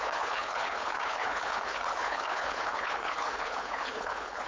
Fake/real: fake